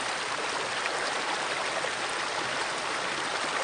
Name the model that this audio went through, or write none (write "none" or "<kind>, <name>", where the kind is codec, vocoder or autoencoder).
none